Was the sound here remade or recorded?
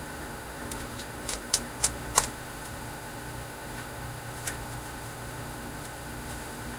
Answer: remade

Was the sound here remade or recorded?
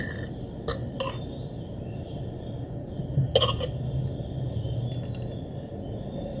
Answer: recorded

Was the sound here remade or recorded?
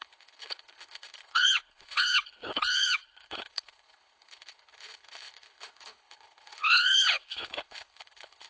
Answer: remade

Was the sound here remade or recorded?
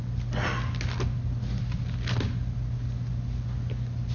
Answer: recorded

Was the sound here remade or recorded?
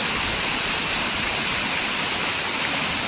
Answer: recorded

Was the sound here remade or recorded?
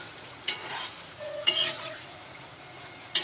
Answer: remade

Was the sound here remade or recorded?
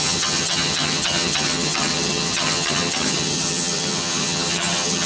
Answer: remade